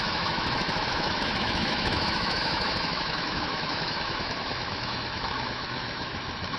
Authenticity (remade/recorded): remade